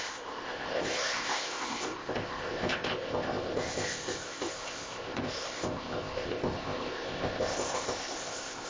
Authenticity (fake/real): fake